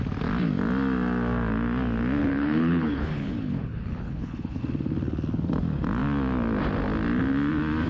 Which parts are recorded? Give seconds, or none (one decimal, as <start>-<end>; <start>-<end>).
0.0-2.2; 4.6-7.9